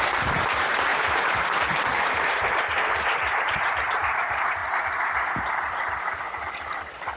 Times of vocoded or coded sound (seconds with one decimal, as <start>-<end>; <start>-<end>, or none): 0.0-4.6